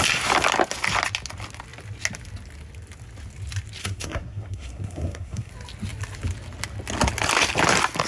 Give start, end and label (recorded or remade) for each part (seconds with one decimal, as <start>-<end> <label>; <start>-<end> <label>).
0.0-3.8 recorded; 3.8-5.5 remade; 5.5-8.1 recorded